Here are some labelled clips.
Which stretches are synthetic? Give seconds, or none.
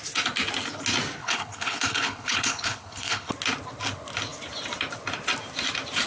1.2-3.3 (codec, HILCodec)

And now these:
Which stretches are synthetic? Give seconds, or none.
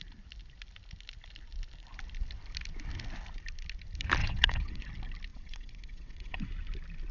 4.2-4.8 (vocoder, WaveNeXt); 5.3-6.5